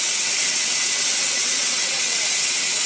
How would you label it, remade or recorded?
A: remade